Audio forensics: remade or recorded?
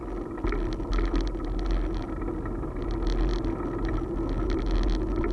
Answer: recorded